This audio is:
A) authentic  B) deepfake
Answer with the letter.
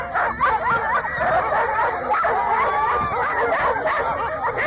A